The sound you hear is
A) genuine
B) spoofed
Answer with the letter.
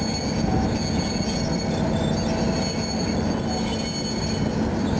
A